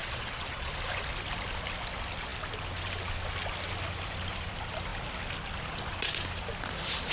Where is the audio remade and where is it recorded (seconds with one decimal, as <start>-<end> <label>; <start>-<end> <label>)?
0.0-0.7 remade; 0.7-7.1 recorded